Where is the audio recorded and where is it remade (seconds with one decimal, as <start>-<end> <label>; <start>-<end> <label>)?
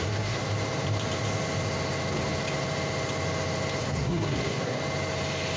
0.0-0.4 remade; 0.4-3.8 recorded; 3.8-4.8 remade; 4.8-5.6 recorded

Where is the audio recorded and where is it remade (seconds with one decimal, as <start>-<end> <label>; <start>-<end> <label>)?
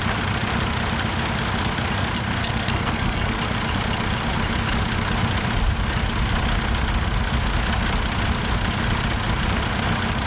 0.0-2.4 recorded; 2.4-3.4 remade; 3.4-10.3 recorded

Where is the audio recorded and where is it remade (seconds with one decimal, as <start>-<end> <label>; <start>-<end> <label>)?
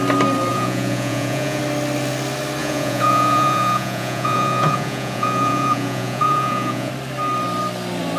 0.0-0.5 recorded; 0.5-1.6 remade; 1.6-2.6 recorded; 2.6-6.9 remade; 6.9-8.2 recorded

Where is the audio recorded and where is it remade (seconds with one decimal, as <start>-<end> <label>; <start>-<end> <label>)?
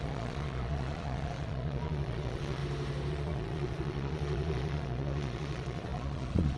0.0-2.6 remade; 2.6-3.1 recorded; 3.1-6.6 remade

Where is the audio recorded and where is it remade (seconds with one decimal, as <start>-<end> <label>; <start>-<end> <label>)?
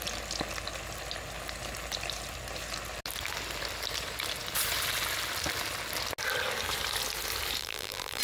0.0-7.6 recorded; 7.6-8.2 remade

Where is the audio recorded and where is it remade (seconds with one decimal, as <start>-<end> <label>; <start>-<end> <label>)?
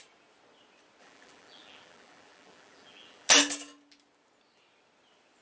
0.0-1.0 recorded; 1.0-3.3 remade; 3.3-5.4 recorded